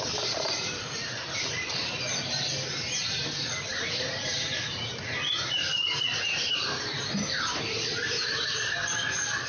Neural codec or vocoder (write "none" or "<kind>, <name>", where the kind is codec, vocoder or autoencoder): vocoder, BigVGAN v2